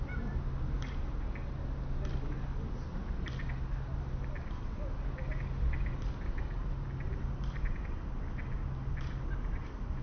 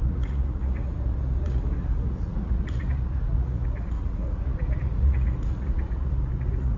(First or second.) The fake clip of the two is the second